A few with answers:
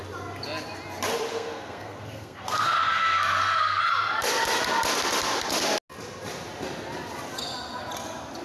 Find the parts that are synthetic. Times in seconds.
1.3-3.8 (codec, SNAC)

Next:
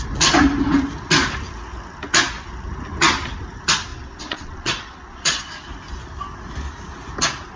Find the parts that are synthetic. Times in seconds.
3.9-5.4 (vocoder, Vocos)

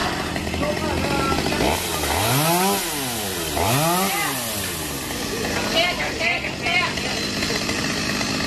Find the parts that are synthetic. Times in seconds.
none